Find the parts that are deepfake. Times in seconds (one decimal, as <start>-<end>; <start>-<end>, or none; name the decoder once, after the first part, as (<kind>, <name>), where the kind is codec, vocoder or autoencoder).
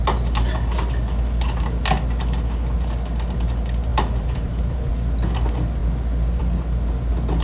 3.9-4.9 (vocoder, BigVGAN v2)